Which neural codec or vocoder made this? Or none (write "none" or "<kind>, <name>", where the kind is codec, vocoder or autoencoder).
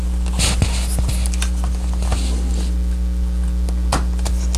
none